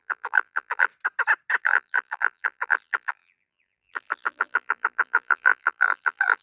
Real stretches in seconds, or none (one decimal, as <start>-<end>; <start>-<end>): 0.9-1.6